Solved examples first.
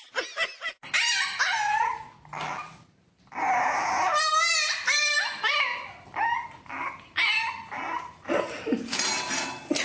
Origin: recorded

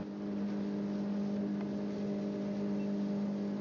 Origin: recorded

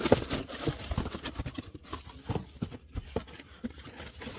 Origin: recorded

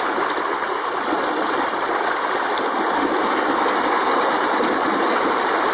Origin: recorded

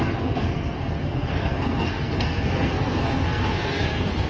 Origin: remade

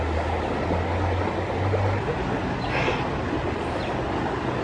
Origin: recorded